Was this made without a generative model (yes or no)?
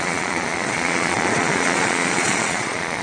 no